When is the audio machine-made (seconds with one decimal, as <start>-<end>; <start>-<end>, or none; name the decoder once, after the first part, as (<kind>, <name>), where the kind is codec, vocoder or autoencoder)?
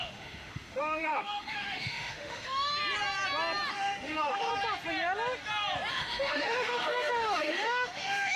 0.0-2.7 (autoencoder, DAC-VAE); 3.7-4.5; 5.9-8.4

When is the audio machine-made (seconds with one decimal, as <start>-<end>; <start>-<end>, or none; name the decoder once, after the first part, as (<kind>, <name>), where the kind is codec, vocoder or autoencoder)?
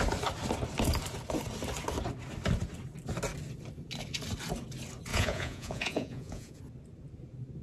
5.1-6.6 (vocoder, Vocos)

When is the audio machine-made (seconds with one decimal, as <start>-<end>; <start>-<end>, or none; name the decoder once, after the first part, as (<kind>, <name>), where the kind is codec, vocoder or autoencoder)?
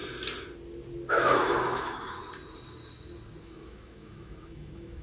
1.1-2.2 (autoencoder, DAC-VAE); 3.4-5.0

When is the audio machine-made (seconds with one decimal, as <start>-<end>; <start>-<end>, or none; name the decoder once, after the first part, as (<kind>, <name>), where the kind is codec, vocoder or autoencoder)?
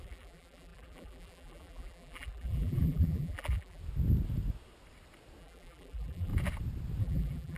0.0-3.8 (vocoder, BigVGAN v2); 5.4-6.3; 7.0-7.6